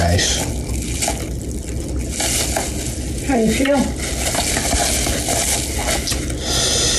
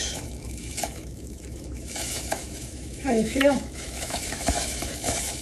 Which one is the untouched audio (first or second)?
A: first